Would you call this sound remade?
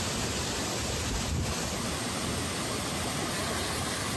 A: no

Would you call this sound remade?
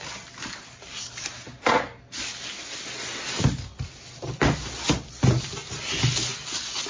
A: no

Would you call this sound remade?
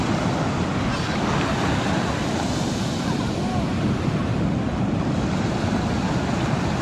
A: no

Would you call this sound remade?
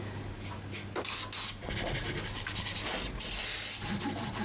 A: no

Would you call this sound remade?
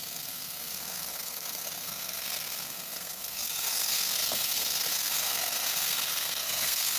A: yes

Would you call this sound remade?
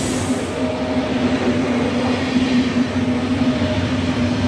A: no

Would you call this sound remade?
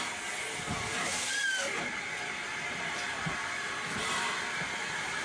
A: no